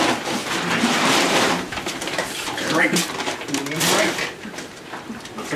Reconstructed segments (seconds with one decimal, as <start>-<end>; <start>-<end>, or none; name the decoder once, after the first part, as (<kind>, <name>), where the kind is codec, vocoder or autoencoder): 0.4-3.7 (vocoder, BigVGAN v2)